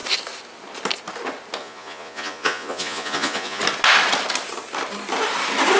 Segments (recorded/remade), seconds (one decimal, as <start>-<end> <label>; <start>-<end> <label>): 0.0-1.6 recorded; 1.6-3.6 remade; 3.6-5.8 recorded